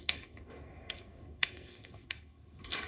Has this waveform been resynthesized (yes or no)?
yes